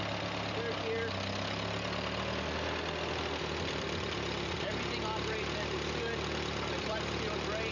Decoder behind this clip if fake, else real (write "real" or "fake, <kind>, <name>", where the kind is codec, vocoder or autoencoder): real